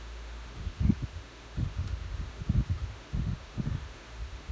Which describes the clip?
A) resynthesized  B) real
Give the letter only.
A